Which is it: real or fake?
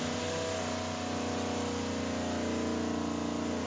real